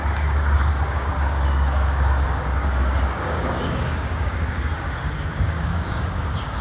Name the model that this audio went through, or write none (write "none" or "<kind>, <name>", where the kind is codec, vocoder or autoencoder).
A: codec, DAC